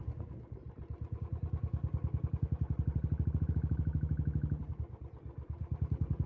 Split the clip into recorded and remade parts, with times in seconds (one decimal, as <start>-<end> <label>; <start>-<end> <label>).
0.0-6.3 recorded